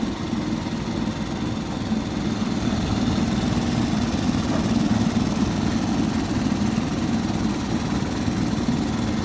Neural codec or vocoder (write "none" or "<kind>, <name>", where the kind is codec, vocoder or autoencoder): none